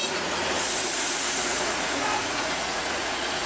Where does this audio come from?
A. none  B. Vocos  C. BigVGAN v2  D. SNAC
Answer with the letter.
B